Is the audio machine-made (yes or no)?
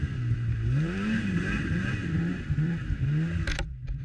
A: yes